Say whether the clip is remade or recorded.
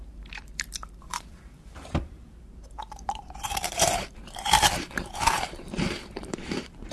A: remade